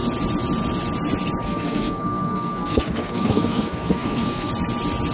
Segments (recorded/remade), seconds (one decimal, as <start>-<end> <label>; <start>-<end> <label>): 0.0-1.4 recorded; 1.4-4.5 remade; 4.5-5.1 recorded